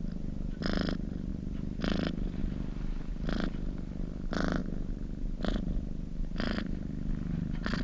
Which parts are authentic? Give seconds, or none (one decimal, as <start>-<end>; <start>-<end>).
0.0-4.6; 5.4-7.8